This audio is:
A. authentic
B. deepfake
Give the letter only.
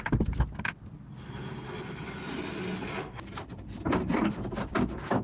A